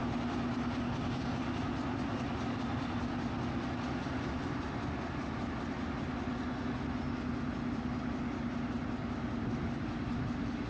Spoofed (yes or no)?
no